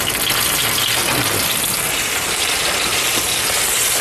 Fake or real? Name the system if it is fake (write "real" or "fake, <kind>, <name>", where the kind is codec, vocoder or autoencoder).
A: real